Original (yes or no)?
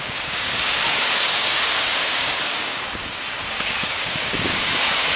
no